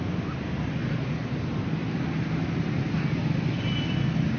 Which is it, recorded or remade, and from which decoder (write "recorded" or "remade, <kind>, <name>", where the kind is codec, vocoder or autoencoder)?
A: recorded